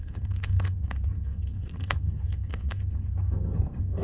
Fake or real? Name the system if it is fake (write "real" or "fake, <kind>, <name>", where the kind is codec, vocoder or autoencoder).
fake, codec, SNAC